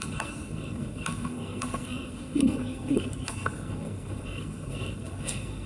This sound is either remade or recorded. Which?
remade